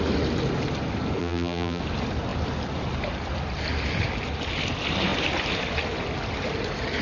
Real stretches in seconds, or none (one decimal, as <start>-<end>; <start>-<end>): 0.0-1.2; 1.8-7.0